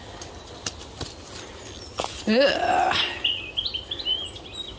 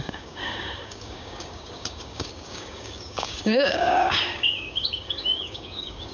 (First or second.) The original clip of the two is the first